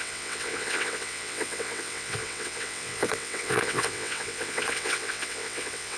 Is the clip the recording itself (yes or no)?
no